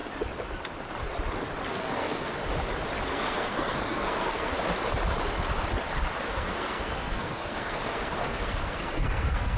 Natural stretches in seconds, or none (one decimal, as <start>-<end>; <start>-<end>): 0.0-1.7; 2.4-3.1; 4.5-6.3